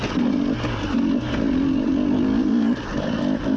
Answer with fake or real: real